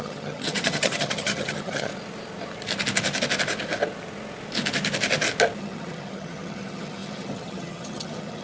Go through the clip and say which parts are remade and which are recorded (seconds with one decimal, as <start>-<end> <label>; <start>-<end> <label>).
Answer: 0.0-1.9 remade; 1.9-5.6 recorded; 5.6-8.4 remade